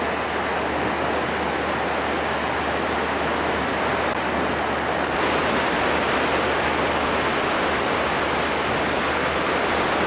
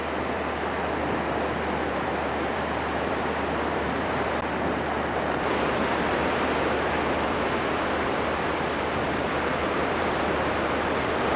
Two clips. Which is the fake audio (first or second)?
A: second